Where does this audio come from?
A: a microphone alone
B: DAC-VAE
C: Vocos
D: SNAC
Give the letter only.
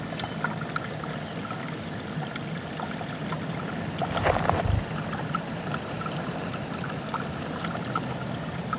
A